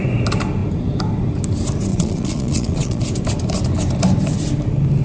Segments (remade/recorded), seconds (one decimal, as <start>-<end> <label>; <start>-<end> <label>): 0.0-1.9 recorded; 1.9-3.0 remade; 3.0-5.0 recorded